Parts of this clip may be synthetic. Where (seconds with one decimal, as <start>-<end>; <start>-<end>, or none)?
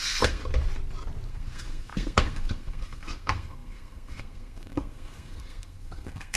0.0-0.4; 1.3-6.4